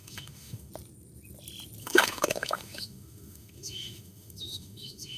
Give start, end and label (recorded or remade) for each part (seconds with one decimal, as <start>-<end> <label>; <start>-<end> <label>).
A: 0.0-0.7 remade; 0.7-1.8 recorded; 1.8-5.2 remade